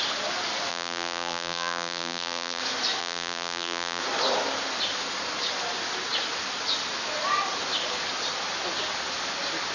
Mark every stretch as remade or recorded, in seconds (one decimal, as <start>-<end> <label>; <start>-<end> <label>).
0.0-0.7 recorded; 0.7-2.6 remade; 2.6-3.0 recorded; 3.0-4.0 remade; 4.0-9.7 recorded